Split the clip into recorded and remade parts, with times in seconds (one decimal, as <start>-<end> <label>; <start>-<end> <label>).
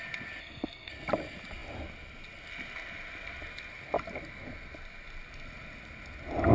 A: 0.0-0.4 recorded; 0.4-0.9 remade; 0.9-6.5 recorded